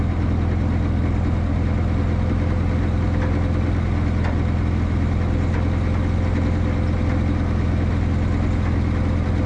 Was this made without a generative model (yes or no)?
yes